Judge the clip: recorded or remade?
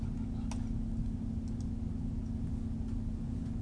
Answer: recorded